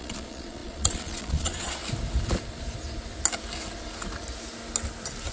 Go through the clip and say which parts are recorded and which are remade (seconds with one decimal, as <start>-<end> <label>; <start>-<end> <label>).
0.0-1.8 remade; 1.8-5.3 recorded